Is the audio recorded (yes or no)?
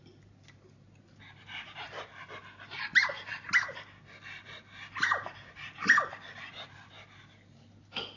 yes